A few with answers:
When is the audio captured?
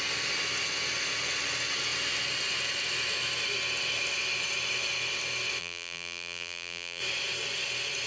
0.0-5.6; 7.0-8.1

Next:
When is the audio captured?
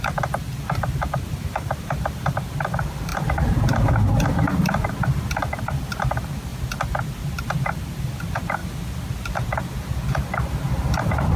6.5-7.4; 8.6-10.1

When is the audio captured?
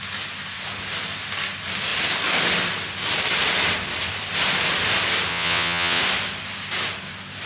0.0-5.3; 6.0-7.5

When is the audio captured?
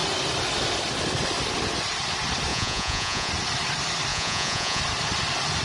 0.0-2.5; 3.3-4.1; 4.8-5.6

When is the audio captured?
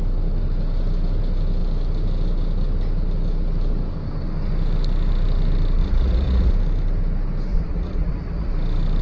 0.0-5.8; 6.5-7.5; 8.5-9.0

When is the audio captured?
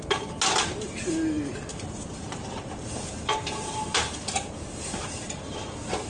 0.0-1.7; 2.9-6.1